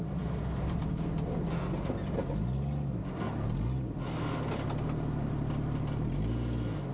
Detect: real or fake real